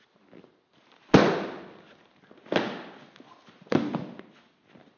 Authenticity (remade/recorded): recorded